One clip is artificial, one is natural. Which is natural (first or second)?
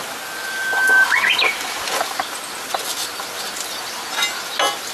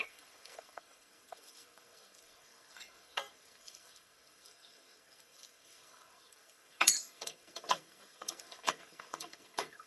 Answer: first